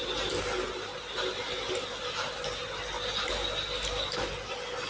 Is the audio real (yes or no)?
yes